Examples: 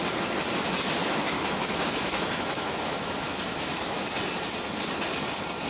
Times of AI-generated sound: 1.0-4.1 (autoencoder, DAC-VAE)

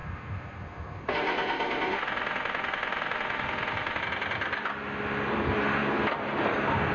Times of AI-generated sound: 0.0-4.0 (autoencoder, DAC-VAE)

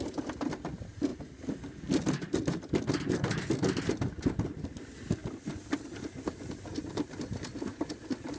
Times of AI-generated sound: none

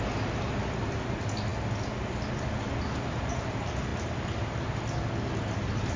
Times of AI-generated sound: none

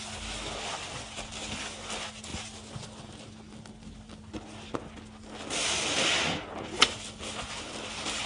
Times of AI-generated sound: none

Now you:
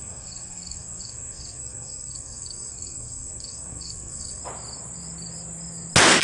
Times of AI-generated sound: 0.0-4.4 (codec, SNAC)

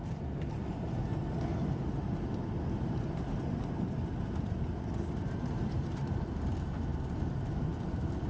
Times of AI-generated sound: 0.0-1.1 (vocoder, BigVGAN v2); 5.1-8.3

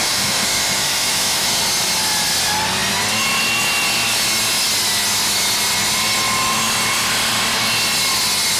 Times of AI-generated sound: 0.0-1.6 (autoencoder, DAC-VAE)